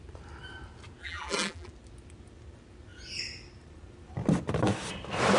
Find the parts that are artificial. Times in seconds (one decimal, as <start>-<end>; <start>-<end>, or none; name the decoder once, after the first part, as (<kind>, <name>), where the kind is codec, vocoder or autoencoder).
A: 1.0-1.7 (vocoder, BigVGAN v2)